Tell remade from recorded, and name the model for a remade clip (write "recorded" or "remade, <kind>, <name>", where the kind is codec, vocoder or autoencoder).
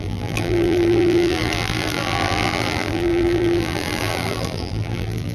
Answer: remade, vocoder, BigVGAN v2